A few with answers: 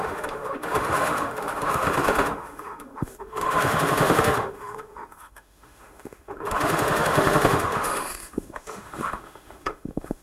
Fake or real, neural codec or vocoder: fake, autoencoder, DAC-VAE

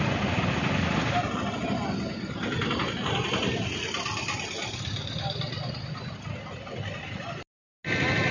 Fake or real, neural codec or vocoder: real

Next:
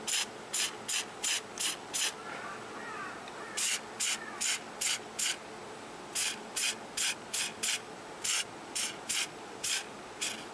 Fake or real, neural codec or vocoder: real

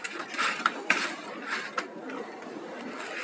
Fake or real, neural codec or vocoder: real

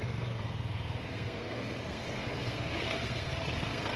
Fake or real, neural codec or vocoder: fake, codec, SNAC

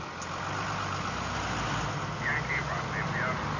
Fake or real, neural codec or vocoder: real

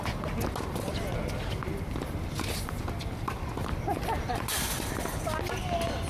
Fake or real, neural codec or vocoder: real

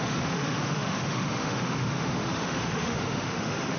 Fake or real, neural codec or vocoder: fake, autoencoder, DAC-VAE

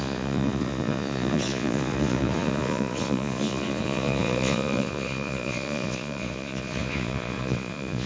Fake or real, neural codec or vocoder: fake, vocoder, Vocos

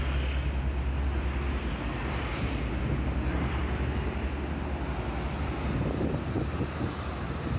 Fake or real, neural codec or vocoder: real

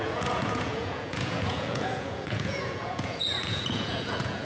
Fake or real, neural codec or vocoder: fake, vocoder, Vocos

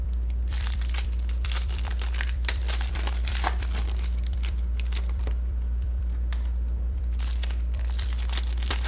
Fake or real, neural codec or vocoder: fake, vocoder, BigVGAN v2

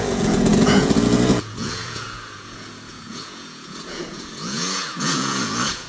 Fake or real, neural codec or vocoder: fake, vocoder, Vocos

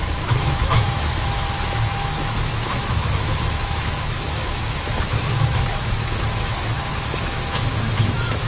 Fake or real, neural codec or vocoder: fake, autoencoder, DAC-VAE